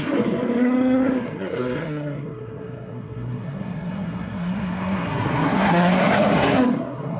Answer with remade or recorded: remade